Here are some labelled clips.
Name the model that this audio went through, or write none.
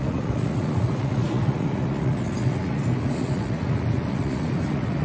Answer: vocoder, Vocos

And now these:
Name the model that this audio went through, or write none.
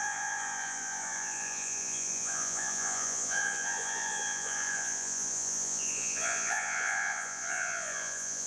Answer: vocoder, Vocos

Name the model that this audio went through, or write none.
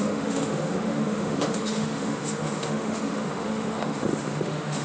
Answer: autoencoder, DAC-VAE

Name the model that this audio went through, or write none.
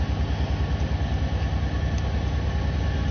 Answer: none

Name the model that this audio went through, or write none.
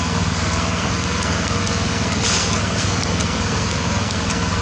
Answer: codec, SNAC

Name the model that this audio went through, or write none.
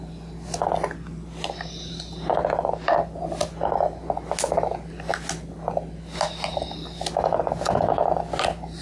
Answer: none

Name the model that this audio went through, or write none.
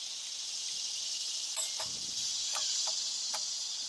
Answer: none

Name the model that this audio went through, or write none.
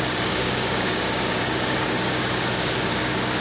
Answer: codec, DAC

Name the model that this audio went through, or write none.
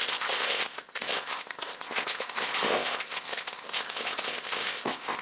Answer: codec, ZipCodec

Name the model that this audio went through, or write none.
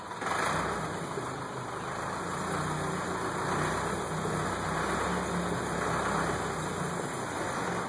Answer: none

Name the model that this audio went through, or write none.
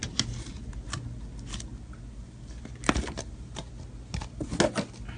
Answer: none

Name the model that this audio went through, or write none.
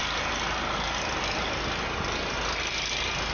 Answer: none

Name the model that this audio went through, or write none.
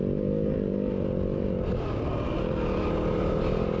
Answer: none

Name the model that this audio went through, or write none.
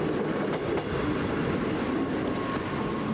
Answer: none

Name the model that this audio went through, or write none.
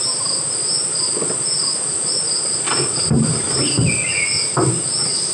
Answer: none